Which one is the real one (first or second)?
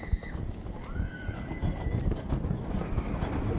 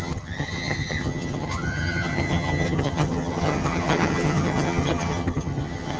first